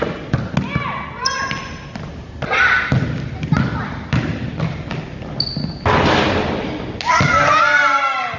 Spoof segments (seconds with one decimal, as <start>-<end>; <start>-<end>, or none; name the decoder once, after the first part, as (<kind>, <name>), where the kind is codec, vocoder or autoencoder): none